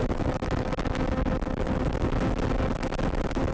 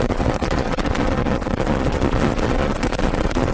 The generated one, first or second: second